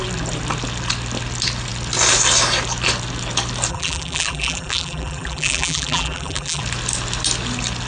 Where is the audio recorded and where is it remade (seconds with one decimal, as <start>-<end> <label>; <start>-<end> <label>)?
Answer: 0.0-3.7 recorded; 3.7-6.6 remade; 6.6-7.9 recorded